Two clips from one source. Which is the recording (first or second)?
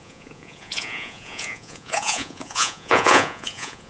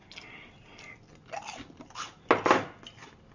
second